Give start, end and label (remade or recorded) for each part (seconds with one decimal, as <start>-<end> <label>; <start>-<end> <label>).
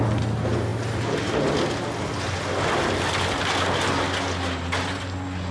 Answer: 0.0-5.5 recorded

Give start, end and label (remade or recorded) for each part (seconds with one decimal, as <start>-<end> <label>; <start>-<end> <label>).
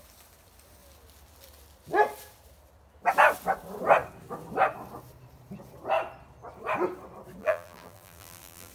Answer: 0.0-7.4 recorded; 7.4-8.7 remade